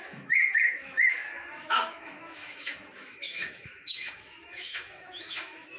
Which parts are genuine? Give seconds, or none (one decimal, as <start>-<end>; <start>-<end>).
none